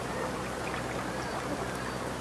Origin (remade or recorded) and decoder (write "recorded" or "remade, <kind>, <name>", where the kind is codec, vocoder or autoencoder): remade, vocoder, BigVGAN v2